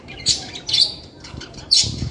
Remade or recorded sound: remade